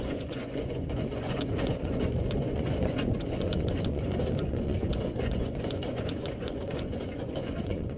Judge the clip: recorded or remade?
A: remade